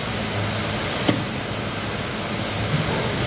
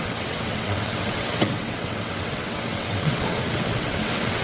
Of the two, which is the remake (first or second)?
second